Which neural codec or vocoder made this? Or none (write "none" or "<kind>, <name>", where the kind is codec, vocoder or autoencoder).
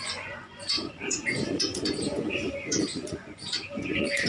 vocoder, Vocos